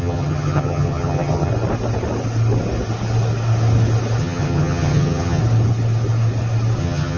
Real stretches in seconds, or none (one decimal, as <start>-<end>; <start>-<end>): 1.5-4.2; 5.4-6.8